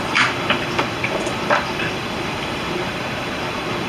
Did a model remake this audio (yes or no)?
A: yes